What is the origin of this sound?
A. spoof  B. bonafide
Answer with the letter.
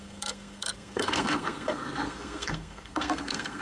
A